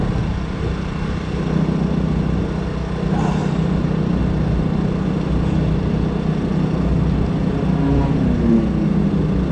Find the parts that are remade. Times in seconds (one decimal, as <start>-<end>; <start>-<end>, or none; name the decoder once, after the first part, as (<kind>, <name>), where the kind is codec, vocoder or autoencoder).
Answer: 3.4-4.2 (vocoder, BigVGAN v2)